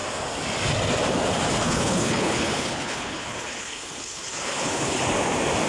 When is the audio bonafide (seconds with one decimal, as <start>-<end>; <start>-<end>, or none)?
0.0-1.6; 5.0-5.7